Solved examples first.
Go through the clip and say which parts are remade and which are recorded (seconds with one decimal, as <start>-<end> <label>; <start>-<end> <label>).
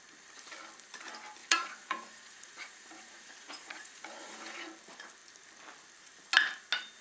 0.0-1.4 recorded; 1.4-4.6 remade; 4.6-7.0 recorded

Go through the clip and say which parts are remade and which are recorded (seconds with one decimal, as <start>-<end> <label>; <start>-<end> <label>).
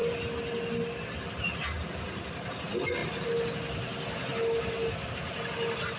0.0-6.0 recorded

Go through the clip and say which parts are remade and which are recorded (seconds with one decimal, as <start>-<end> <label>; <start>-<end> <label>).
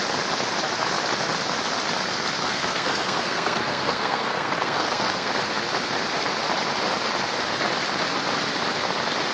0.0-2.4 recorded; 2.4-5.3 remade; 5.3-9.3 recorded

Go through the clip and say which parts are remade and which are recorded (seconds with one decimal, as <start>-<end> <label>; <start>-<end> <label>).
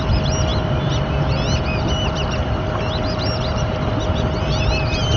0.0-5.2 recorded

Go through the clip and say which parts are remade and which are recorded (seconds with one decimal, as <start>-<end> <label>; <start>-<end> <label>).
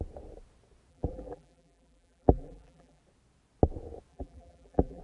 0.0-0.9 recorded; 0.9-3.0 remade; 3.0-4.1 recorded; 4.1-5.0 remade